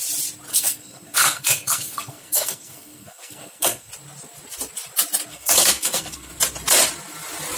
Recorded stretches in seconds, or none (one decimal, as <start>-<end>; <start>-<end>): 0.0-0.5; 3.9-5.3; 6.3-7.6